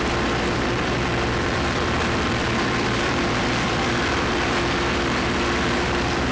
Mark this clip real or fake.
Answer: fake